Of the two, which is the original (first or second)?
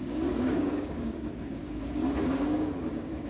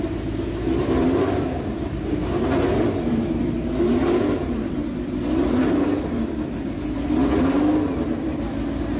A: second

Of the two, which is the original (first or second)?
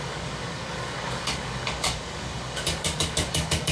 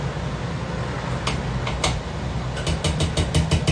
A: second